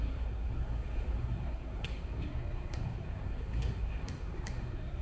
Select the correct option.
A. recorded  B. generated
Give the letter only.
B